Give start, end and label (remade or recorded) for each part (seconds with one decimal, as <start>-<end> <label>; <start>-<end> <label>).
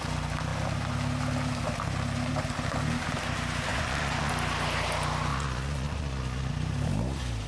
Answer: 0.0-3.7 recorded; 3.7-4.3 remade; 4.3-5.3 recorded; 5.3-6.5 remade; 6.5-7.5 recorded